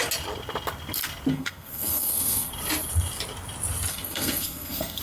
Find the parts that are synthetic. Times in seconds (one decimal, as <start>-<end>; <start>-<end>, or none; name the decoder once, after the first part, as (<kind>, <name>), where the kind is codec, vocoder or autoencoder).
1.3-2.5 (codec, SNAC); 3.9-5.0